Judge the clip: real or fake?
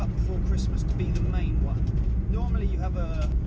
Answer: real